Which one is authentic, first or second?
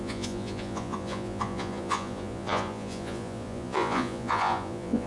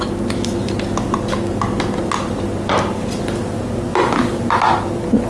second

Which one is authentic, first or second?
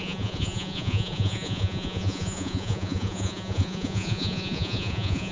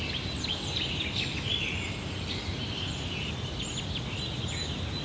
second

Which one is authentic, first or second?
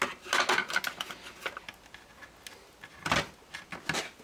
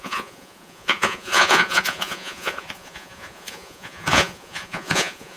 first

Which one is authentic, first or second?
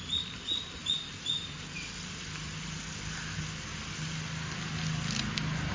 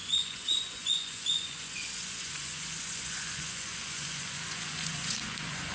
first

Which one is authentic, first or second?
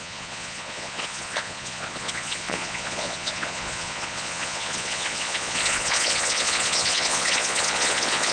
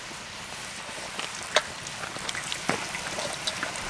second